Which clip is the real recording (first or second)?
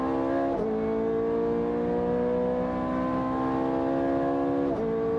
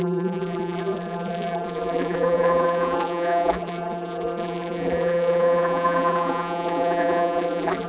first